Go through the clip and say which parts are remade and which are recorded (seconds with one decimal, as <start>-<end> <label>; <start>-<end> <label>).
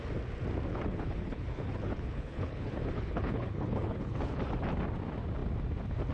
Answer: 0.0-0.7 recorded; 0.7-4.4 remade; 4.4-6.1 recorded